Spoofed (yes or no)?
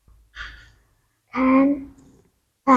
no